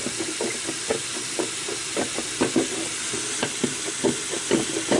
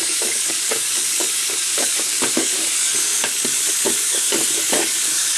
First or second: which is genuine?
first